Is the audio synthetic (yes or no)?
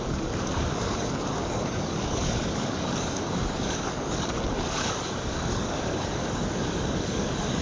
yes